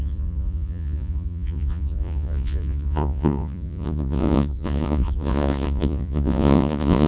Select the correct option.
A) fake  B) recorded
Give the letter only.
A